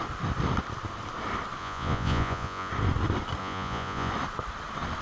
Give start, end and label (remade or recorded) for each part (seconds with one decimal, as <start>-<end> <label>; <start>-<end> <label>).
0.0-1.6 recorded; 1.6-2.7 remade; 2.7-3.4 recorded; 3.4-4.1 remade; 4.1-5.0 recorded